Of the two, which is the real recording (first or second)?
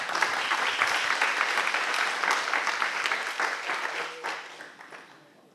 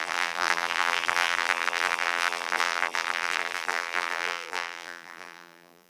first